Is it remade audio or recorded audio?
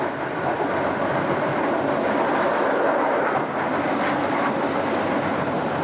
recorded